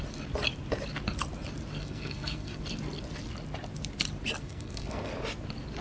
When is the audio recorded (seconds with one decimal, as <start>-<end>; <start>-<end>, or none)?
0.0-1.8; 2.6-4.4; 5.1-5.8